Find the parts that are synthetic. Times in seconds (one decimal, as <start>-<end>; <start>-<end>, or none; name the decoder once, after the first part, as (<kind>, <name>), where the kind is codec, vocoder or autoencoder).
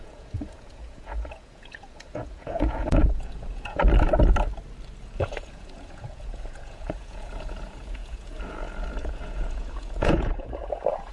0.0-3.8 (vocoder, Vocos); 5.0-11.1